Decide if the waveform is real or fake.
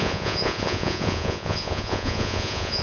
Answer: fake